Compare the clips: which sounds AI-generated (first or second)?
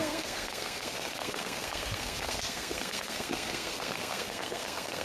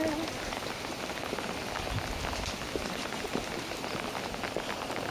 first